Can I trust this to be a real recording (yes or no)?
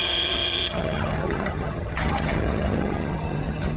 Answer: no